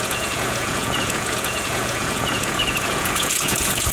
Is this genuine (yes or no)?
no